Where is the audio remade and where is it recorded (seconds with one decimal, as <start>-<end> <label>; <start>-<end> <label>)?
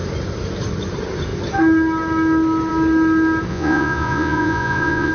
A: 0.0-3.5 recorded; 3.5-5.1 remade